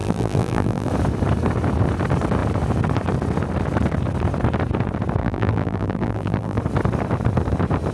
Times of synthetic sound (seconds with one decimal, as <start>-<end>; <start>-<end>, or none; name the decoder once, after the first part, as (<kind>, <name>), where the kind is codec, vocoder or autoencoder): 0.0-0.9 (vocoder, BigVGAN v2); 5.2-6.6